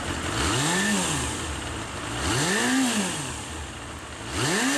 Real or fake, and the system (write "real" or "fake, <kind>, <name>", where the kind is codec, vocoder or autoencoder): real